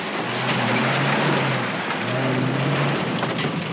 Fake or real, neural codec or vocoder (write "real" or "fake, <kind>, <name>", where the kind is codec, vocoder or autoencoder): real